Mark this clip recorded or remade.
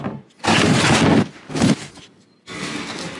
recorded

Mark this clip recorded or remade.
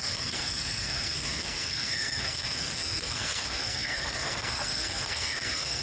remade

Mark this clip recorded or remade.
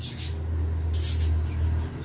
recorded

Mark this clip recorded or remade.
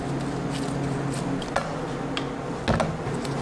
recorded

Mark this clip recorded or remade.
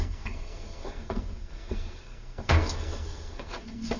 remade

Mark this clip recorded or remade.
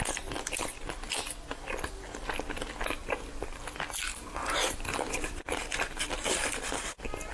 recorded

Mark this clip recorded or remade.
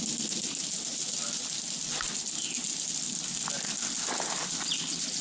recorded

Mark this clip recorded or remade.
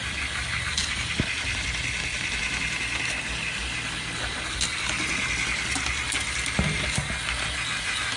recorded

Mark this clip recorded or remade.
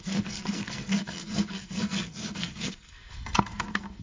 remade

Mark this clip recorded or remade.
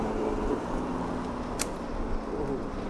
recorded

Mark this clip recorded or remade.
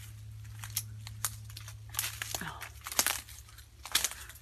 recorded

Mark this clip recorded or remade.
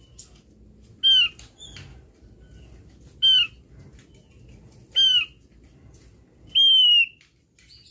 recorded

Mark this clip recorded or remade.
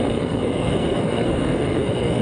remade